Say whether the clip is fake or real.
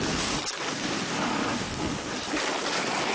real